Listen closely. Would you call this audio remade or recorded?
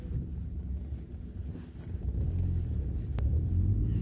recorded